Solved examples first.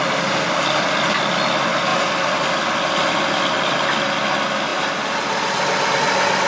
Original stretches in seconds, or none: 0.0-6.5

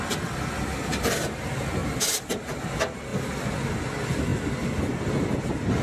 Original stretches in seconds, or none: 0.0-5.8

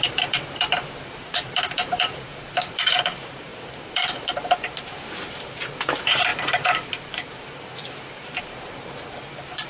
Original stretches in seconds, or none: none